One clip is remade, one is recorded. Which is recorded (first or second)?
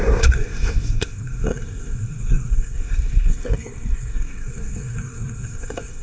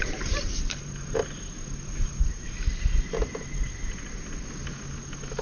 second